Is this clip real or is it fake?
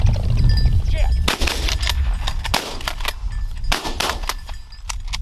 real